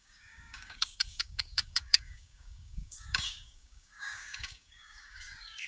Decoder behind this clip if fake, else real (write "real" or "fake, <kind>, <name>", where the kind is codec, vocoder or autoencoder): fake, codec, DAC